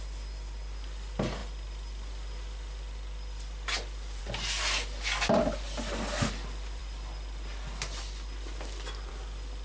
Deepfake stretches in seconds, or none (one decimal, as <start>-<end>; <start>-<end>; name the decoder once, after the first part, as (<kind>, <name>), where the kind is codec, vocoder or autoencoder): none